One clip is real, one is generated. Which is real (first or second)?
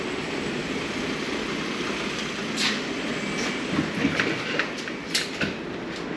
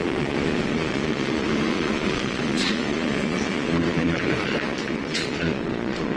first